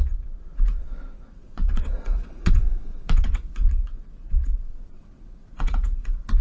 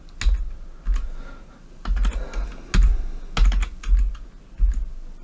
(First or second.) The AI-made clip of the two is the first